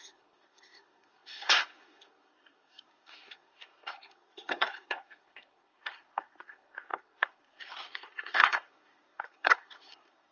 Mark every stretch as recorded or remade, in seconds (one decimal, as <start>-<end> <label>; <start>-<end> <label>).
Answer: 0.0-10.3 remade